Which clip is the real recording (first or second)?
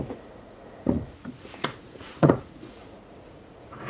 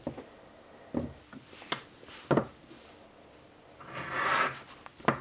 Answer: second